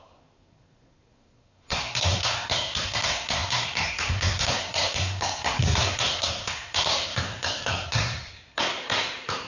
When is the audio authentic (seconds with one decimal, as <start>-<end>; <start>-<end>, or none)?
none